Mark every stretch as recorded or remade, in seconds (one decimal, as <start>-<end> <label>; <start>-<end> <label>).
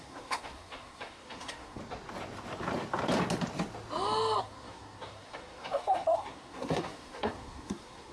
0.0-1.8 remade; 1.8-4.4 recorded; 4.4-8.1 remade